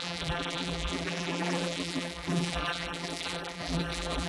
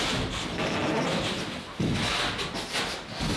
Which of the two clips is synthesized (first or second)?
first